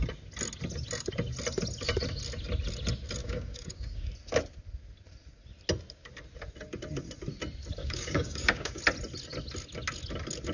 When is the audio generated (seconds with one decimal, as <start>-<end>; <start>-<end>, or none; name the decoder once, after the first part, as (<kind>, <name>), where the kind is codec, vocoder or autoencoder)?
3.2-4.1 (codec, DAC); 7.8-8.8